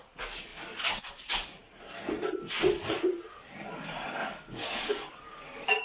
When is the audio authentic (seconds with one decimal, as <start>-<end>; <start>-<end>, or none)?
1.6-3.7